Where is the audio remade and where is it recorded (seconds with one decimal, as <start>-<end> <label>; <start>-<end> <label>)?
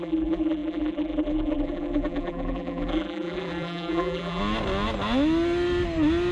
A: 0.0-4.4 remade; 4.4-6.3 recorded